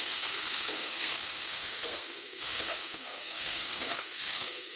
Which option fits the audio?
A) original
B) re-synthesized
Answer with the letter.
B